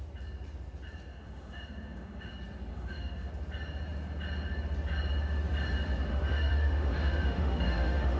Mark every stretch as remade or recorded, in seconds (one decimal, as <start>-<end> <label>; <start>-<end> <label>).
0.0-1.1 recorded; 1.1-2.3 remade; 2.3-2.7 recorded; 2.7-3.3 remade; 3.3-6.1 recorded; 6.1-8.2 remade